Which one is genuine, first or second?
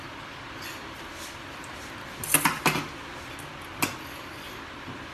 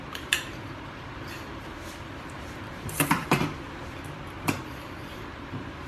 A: first